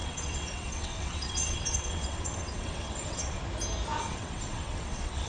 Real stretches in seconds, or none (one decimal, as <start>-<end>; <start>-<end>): 3.4-4.0